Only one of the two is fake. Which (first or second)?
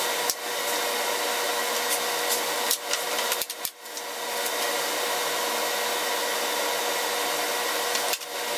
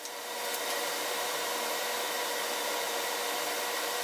second